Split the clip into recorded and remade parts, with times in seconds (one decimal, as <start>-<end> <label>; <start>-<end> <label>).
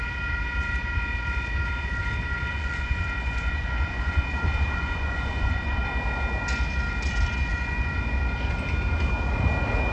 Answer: 0.0-2.5 recorded; 2.5-5.8 remade; 5.8-7.5 recorded; 7.5-8.2 remade; 8.2-9.9 recorded